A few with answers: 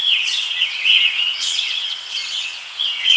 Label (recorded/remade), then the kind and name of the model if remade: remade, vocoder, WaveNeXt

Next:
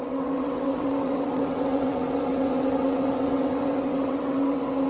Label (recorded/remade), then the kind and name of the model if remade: remade, vocoder, WaveNeXt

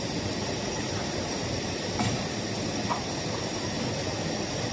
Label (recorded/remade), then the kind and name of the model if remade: recorded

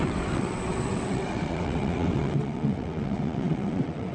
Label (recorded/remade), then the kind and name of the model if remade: remade, vocoder, WaveNeXt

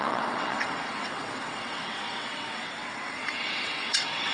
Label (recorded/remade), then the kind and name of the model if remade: remade, vocoder, WaveNeXt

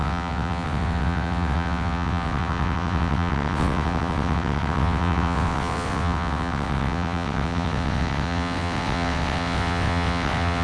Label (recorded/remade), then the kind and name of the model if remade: remade, vocoder, WaveNeXt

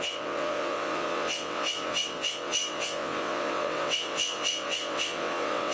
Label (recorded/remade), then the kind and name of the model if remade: remade, vocoder, WaveNeXt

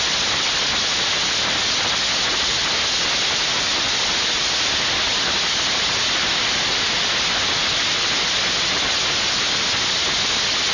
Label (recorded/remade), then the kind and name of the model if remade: recorded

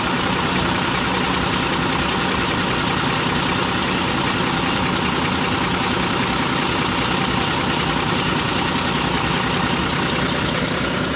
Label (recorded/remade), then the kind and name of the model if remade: recorded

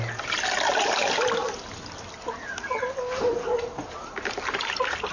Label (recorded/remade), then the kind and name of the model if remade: recorded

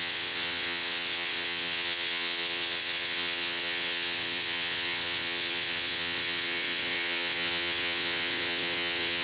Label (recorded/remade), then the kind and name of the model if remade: remade, vocoder, WaveNeXt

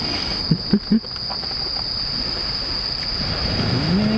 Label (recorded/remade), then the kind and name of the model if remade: recorded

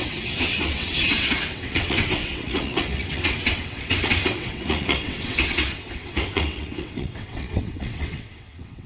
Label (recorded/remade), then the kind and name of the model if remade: remade, vocoder, WaveNeXt